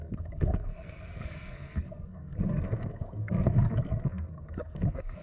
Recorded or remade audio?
remade